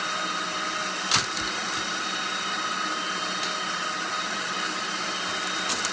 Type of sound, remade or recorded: recorded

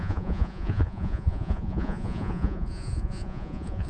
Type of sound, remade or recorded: remade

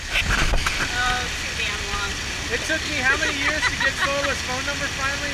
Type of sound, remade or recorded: recorded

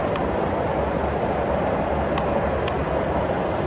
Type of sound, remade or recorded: recorded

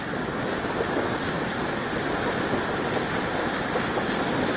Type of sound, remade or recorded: recorded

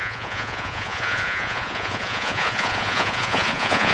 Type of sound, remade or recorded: remade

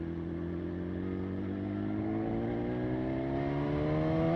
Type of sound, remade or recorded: recorded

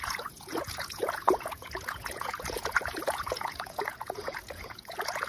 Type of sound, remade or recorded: remade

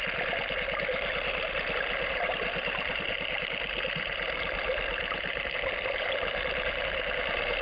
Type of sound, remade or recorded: recorded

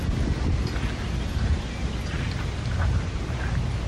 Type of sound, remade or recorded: recorded